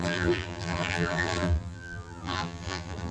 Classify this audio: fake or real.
fake